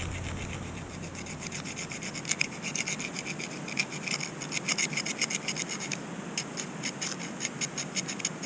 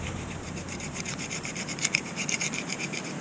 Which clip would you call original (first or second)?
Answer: first